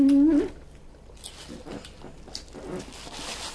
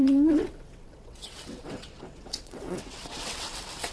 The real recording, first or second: first